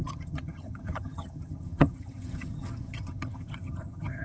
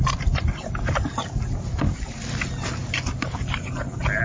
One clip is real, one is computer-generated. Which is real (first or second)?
second